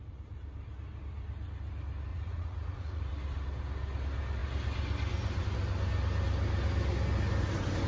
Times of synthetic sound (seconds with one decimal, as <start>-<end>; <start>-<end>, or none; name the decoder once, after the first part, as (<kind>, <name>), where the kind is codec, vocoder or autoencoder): 2.1-3.0 (vocoder, Vocos)